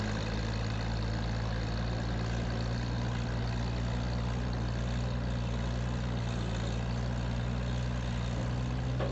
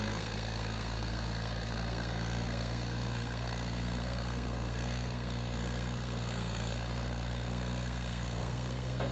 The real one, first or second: first